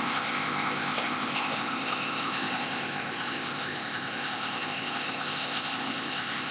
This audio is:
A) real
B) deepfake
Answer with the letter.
B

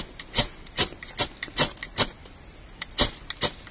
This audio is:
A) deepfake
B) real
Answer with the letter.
B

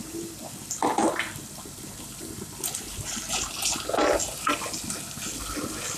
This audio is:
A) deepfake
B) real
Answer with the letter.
B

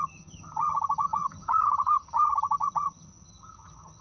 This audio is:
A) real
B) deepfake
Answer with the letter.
B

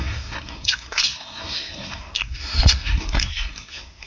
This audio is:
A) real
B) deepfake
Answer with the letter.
B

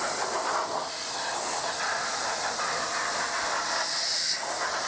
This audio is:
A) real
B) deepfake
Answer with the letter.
A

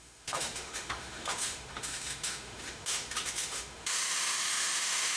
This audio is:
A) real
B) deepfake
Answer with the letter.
B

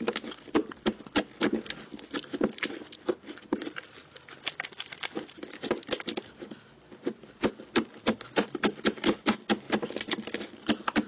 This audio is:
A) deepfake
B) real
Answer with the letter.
B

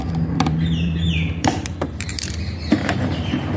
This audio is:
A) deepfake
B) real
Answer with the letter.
A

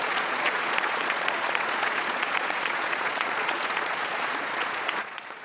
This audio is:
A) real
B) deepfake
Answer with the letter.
B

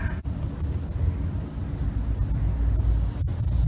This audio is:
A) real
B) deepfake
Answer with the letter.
A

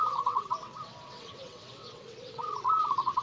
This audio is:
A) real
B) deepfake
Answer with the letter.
B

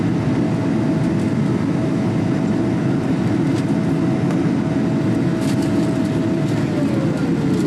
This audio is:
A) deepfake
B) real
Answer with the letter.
B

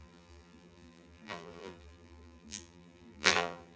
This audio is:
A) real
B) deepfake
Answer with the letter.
B